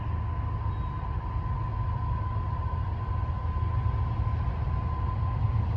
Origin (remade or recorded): recorded